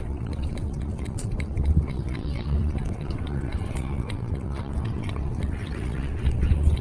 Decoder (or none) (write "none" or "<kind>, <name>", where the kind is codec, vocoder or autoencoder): vocoder, WaveNeXt